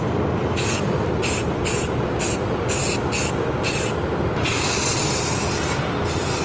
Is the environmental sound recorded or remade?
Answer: recorded